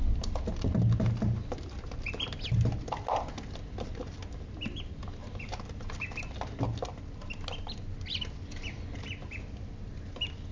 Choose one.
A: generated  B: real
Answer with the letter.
B